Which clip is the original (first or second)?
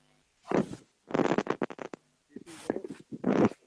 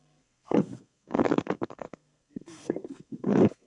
first